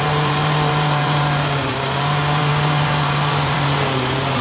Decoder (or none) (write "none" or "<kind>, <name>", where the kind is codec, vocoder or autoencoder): vocoder, BigVGAN v2